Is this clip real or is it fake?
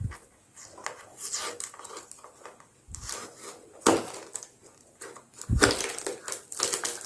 real